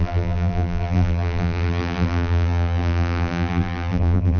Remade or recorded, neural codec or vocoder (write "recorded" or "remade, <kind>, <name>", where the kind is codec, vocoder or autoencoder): remade, vocoder, BigVGAN v2